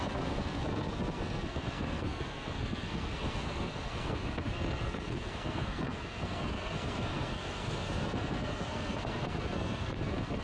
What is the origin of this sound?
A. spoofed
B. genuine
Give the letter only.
A